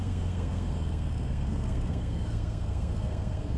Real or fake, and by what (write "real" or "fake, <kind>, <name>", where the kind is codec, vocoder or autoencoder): fake, codec, SNAC